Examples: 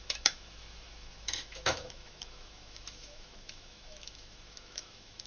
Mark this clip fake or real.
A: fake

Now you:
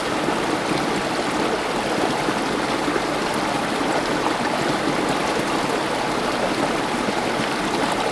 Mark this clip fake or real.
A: real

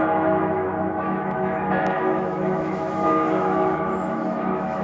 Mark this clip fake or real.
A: fake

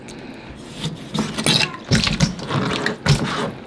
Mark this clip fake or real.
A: real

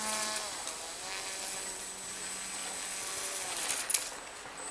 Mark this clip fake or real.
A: real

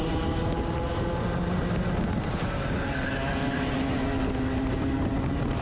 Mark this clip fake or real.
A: real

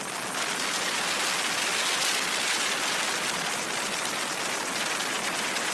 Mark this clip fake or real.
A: real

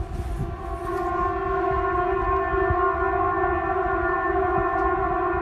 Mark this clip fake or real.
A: real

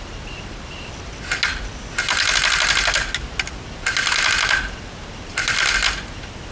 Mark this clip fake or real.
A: real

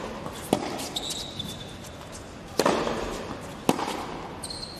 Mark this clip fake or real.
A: real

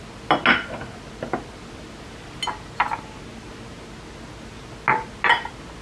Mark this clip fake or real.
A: real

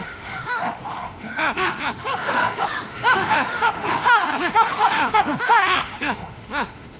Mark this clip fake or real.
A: fake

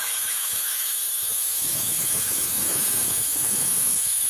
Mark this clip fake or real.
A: fake